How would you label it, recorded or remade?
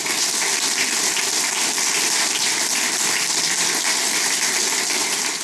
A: recorded